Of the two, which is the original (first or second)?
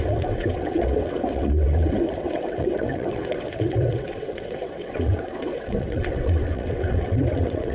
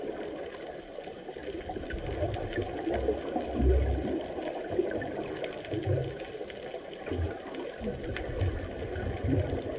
second